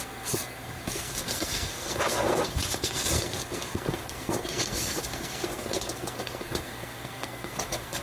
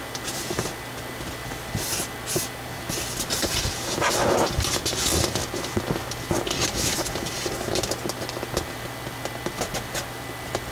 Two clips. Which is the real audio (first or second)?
second